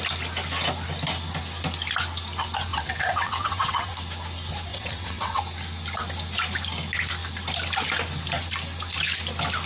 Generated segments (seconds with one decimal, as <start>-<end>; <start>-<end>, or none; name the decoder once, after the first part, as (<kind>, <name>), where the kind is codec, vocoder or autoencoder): 2.7-3.9 (vocoder, WaveNeXt); 4.7-5.4